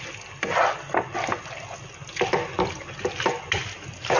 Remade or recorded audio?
recorded